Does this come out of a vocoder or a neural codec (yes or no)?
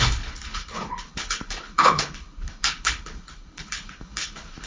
yes